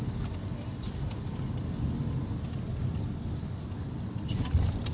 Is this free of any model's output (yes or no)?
yes